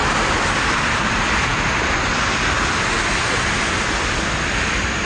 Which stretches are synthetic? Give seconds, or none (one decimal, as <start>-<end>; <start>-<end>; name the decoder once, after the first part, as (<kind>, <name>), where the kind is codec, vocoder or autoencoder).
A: none